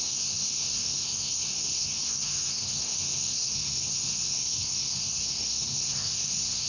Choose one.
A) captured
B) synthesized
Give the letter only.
B